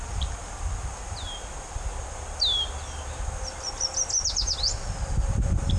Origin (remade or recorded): recorded